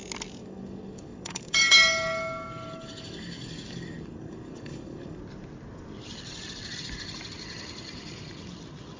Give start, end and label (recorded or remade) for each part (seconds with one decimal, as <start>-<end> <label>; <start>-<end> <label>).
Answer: 0.0-0.4 recorded; 0.4-5.2 remade; 5.2-9.0 recorded